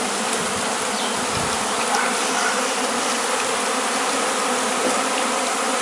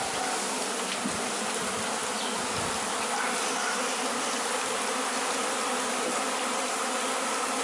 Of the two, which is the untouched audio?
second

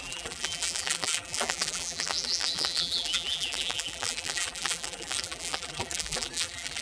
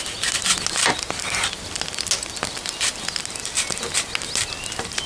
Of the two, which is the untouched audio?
second